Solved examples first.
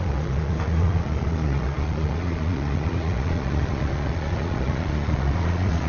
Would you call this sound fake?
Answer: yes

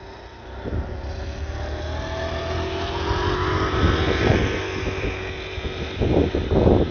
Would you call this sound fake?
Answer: no